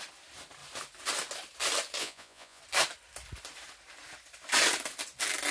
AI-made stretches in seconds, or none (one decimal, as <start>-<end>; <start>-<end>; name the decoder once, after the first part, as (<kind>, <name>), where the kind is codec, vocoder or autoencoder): 2.0-2.6 (vocoder, Vocos)